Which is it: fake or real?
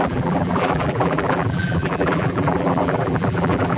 fake